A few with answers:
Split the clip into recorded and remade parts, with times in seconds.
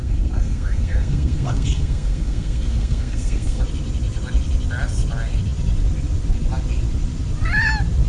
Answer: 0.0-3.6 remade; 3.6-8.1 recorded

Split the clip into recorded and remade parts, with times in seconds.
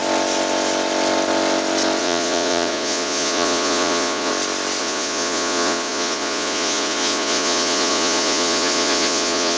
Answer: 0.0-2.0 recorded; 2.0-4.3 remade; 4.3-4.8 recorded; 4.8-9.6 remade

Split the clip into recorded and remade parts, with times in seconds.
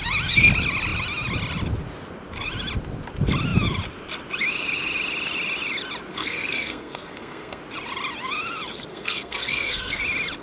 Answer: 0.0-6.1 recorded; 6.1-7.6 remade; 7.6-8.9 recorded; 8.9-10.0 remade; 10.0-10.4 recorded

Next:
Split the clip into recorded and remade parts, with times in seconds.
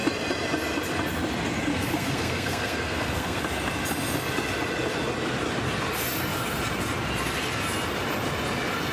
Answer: 0.0-1.7 recorded; 1.7-3.4 remade; 3.4-8.9 recorded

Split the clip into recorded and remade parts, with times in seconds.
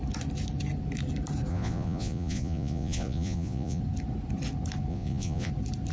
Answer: 0.0-1.5 recorded; 1.5-3.8 remade; 3.8-4.9 recorded; 4.9-5.5 remade; 5.5-5.9 recorded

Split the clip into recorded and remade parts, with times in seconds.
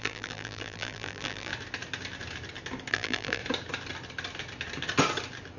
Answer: 0.0-1.5 remade; 1.5-2.9 recorded; 2.9-3.4 remade; 3.4-5.6 recorded